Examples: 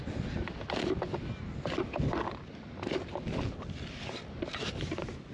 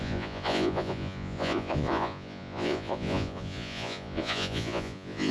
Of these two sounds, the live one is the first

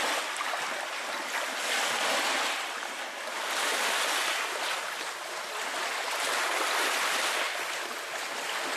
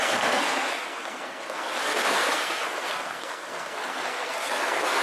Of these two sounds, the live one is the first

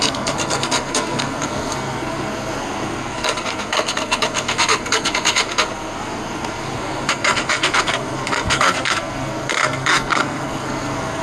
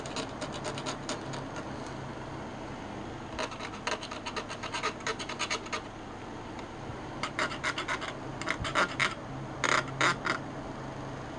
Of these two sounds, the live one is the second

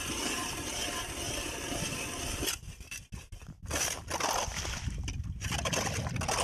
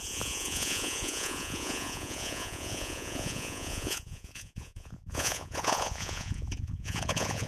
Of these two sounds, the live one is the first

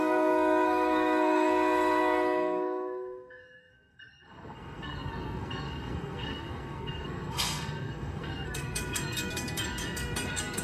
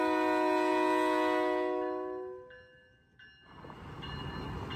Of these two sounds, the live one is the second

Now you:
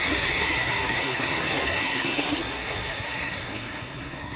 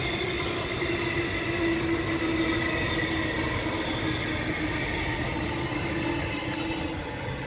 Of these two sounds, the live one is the second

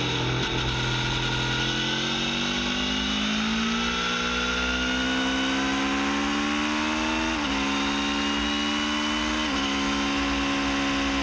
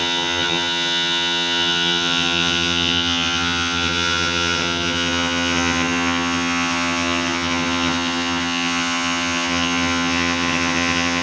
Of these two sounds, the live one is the first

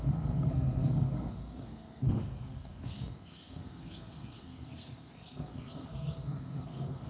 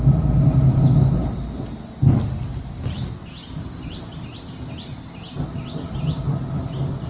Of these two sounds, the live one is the second